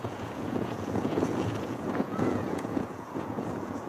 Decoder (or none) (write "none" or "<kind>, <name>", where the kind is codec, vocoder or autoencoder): vocoder, Vocos